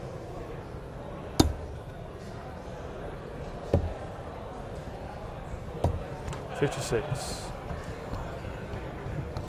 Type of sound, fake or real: real